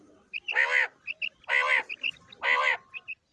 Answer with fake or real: real